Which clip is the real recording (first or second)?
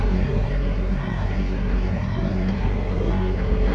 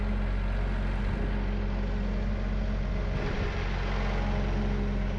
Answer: second